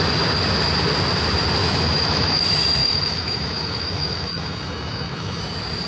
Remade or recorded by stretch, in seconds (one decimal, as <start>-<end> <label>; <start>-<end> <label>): 0.0-1.6 recorded; 1.6-2.4 remade; 2.4-2.8 recorded; 2.8-5.4 remade; 5.4-5.9 recorded